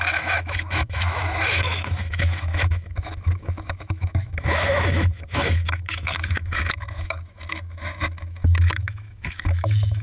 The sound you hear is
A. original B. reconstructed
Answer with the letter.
B